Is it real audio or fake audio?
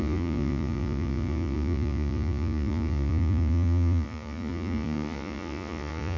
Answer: fake